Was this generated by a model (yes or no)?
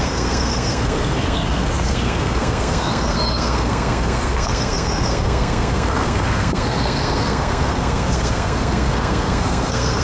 yes